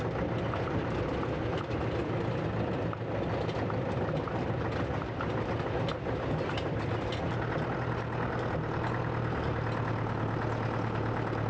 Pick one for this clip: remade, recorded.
recorded